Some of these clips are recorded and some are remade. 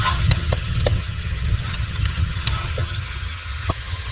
remade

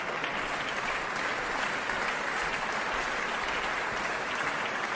recorded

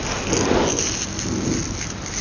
recorded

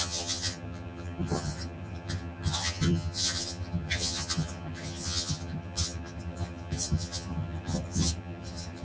remade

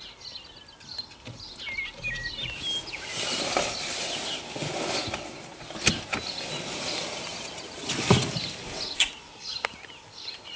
recorded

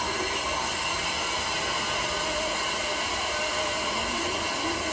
recorded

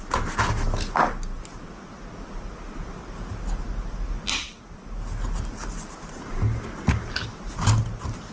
recorded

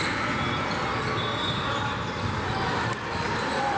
recorded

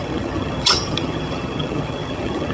remade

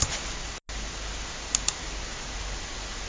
recorded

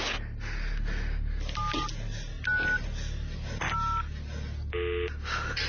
recorded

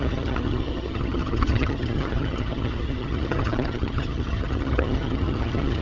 remade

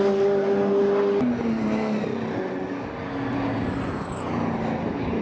recorded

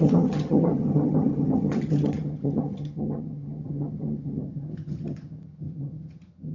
remade